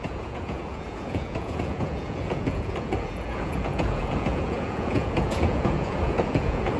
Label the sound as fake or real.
fake